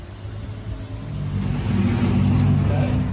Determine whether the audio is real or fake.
real